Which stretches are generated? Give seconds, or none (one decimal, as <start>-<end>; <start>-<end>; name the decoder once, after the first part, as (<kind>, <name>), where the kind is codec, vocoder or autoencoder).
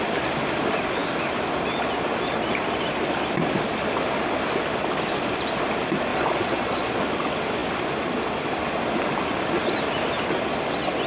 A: 6.1-7.0 (vocoder, Vocos)